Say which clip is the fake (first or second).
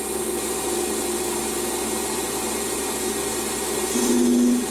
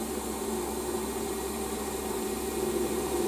second